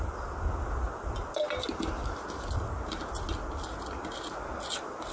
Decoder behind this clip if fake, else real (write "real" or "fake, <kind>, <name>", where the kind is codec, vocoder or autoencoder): real